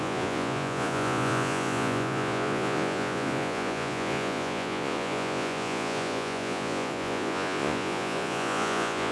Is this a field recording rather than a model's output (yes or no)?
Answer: no